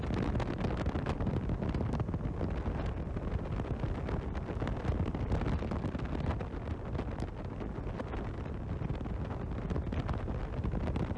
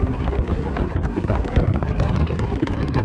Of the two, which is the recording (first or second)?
first